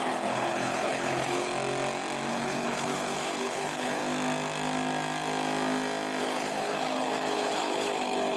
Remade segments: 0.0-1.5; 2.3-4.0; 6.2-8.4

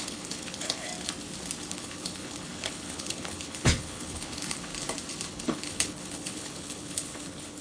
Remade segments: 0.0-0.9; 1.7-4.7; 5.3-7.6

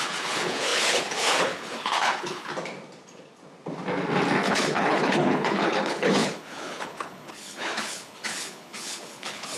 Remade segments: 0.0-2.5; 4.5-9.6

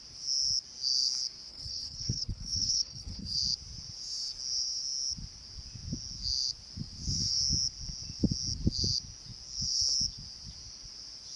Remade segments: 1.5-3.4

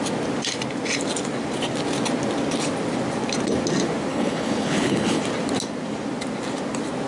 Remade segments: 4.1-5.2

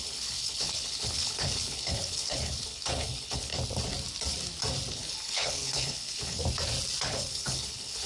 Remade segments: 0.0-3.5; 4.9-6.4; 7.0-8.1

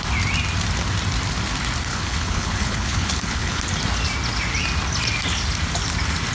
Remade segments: 1.9-3.6

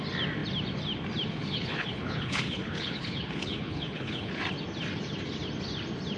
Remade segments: 1.4-4.4